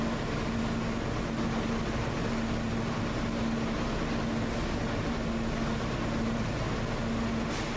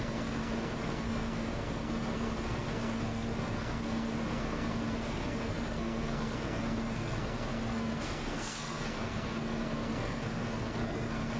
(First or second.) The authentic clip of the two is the first